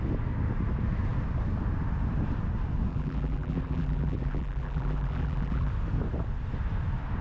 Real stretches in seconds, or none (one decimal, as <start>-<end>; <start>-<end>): 0.0-2.9; 5.7-7.2